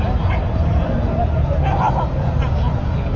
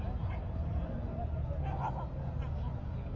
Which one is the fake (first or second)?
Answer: first